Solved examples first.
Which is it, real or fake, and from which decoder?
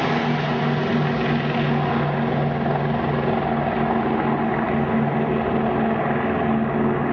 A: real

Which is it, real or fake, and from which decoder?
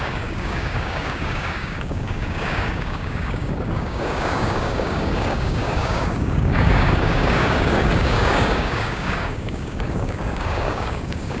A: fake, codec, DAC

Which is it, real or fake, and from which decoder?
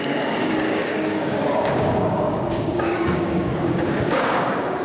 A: fake, codec, DAC